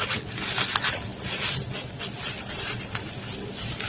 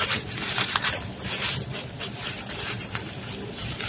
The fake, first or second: second